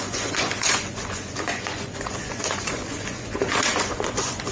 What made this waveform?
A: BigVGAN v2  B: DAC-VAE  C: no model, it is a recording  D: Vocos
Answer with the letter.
D